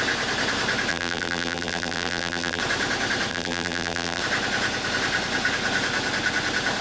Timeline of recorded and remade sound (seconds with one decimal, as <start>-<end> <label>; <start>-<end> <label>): 0.0-0.9 recorded; 0.9-2.6 remade; 2.6-3.3 recorded; 3.3-4.2 remade; 4.2-6.8 recorded